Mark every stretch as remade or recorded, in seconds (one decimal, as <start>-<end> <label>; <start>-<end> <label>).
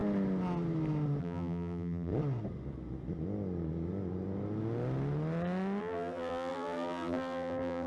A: 0.0-1.2 recorded; 1.2-2.1 remade; 2.1-5.8 recorded; 5.8-7.9 remade